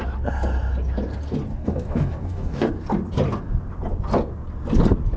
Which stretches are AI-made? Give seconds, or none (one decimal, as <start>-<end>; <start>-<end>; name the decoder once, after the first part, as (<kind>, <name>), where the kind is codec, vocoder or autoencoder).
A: 1.5-2.7 (codec, DAC)